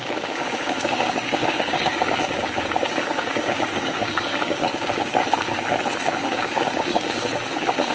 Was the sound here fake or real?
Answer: fake